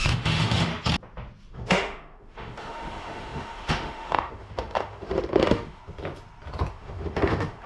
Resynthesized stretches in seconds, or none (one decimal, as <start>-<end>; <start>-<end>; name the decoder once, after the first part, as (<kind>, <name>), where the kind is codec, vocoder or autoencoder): 0.0-0.7 (autoencoder, DAC-VAE); 1.5-5.8; 6.7-7.7